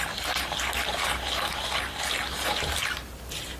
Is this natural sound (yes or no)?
no